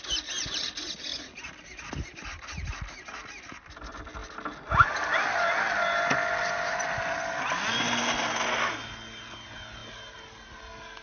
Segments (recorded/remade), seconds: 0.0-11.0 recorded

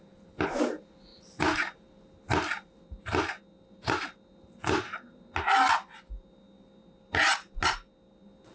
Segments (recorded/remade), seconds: 0.0-8.5 recorded

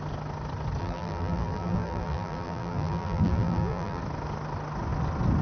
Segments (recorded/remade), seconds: 0.0-0.8 recorded; 0.8-4.0 remade; 4.0-5.4 recorded

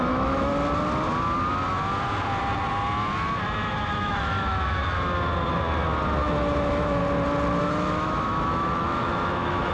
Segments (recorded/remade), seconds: 0.0-0.5 remade; 0.5-3.9 recorded; 3.9-4.8 remade; 4.8-6.2 recorded; 6.2-7.0 remade; 7.0-7.6 recorded; 7.6-9.7 remade

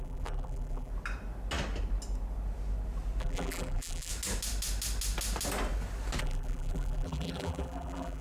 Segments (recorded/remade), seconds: 0.0-0.9 remade; 0.9-3.2 recorded; 3.2-4.1 remade; 4.1-6.2 recorded; 6.2-8.2 remade

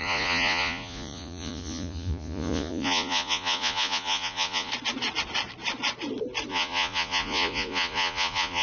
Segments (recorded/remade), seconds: 0.0-4.7 remade; 4.7-6.5 recorded; 6.5-8.6 remade

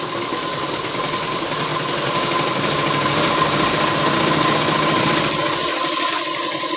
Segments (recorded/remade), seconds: 0.0-6.8 recorded

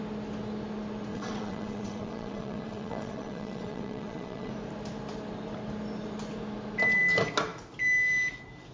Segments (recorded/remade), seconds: 0.0-1.1 recorded; 1.1-4.5 remade; 4.5-8.7 recorded